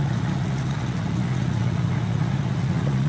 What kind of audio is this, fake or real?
fake